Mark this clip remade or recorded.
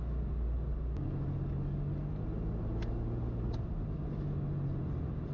recorded